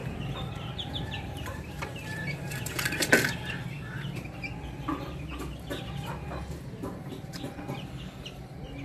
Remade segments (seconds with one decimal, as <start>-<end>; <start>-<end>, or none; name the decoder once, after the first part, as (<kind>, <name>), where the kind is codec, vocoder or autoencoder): 0.0-2.7 (vocoder, BigVGAN v2)

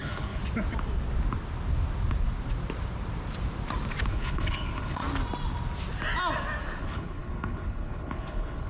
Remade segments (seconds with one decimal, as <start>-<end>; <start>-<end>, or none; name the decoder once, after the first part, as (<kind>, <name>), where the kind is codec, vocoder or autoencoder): 0.0-0.4 (codec, HILCodec); 4.1-5.0; 6.8-8.7

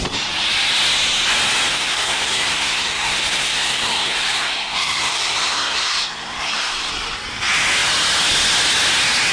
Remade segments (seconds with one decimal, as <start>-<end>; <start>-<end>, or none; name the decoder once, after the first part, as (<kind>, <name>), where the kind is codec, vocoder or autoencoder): 1.7-6.9 (codec, SNAC)

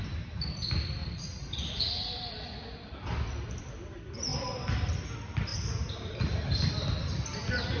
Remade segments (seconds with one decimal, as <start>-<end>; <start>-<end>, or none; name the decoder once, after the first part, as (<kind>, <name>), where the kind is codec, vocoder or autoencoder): 1.0-2.9 (vocoder, BigVGAN v2); 4.3-5.0

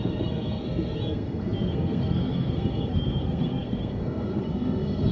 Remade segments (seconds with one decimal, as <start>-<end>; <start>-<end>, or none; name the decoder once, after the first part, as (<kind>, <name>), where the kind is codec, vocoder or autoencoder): 0.0-5.1 (codec, SNAC)

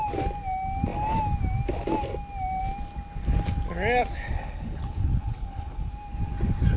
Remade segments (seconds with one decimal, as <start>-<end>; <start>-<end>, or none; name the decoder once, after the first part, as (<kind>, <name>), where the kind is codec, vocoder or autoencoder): 4.3-5.9 (codec, HILCodec)